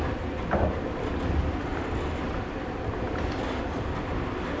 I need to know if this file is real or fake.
fake